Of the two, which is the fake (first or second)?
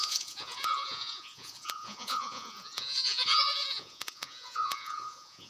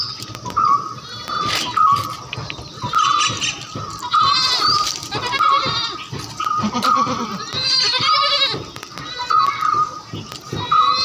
first